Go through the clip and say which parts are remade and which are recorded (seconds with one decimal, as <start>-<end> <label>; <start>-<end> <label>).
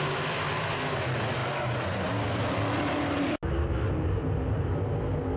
0.0-5.4 recorded